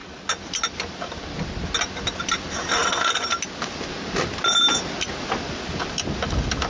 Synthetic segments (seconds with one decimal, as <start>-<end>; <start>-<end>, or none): none